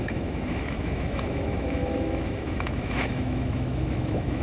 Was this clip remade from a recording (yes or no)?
yes